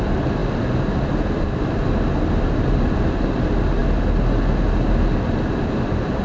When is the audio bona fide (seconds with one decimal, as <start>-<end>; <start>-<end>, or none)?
0.0-6.2